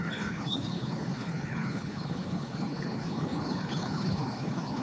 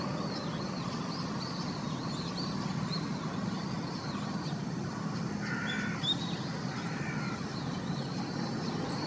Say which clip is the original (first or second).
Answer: second